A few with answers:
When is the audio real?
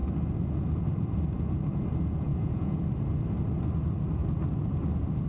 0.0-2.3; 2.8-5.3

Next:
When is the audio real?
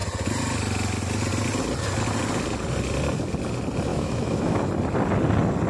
0.0-3.9; 4.6-5.7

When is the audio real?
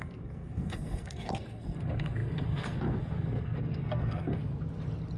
4.4-5.2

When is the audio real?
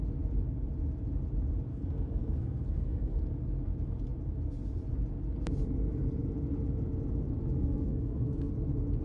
0.0-1.7; 3.2-7.6; 8.5-9.0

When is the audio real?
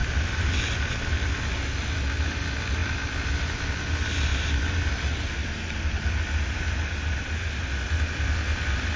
0.0-9.0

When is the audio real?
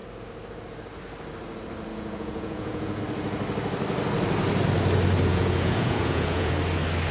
0.0-1.9; 3.0-5.3; 6.5-7.1